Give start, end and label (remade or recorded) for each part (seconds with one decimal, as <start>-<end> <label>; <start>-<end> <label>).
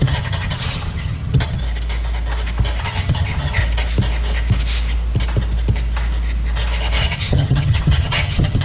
0.0-1.6 remade; 1.6-2.8 recorded; 2.8-3.6 remade; 3.6-7.0 recorded; 7.0-8.6 remade